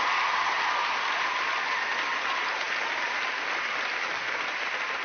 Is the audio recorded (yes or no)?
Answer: yes